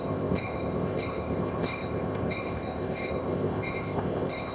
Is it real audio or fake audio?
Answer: fake